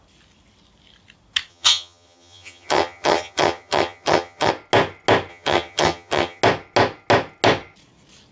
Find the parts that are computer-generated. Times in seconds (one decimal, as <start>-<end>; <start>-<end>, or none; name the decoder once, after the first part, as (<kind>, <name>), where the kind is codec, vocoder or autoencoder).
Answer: 1.5-4.5 (vocoder, HiFi-GAN); 5.3-6.4